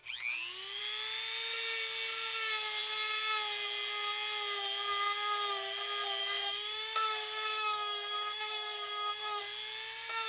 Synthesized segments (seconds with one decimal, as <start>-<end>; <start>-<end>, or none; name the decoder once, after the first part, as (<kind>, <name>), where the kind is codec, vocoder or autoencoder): 6.2-9.4 (autoencoder, DAC-VAE)